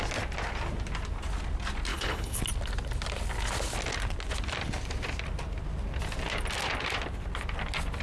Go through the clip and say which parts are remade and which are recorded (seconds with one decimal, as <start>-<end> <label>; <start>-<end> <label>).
0.0-1.9 recorded; 1.9-2.4 remade; 2.4-8.0 recorded